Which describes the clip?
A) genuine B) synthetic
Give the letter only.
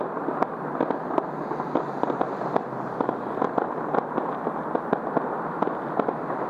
A